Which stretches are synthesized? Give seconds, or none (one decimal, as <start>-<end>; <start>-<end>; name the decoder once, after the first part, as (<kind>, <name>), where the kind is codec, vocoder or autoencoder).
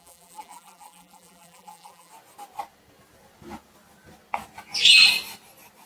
0.0-2.1 (vocoder, BigVGAN v2)